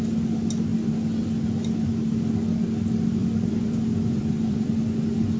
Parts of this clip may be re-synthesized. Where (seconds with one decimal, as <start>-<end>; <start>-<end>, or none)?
3.2-4.7